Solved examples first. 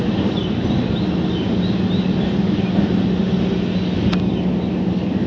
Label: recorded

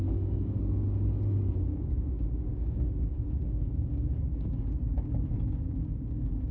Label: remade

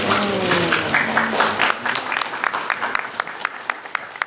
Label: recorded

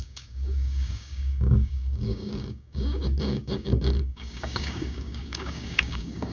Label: remade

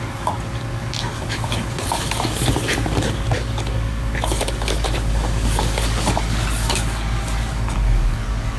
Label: remade